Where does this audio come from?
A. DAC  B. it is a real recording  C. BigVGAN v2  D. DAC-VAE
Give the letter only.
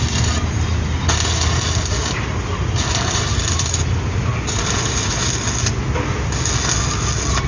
B